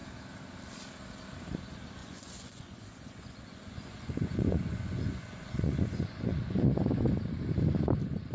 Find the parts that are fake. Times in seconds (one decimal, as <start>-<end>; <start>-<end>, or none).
2.0-7.0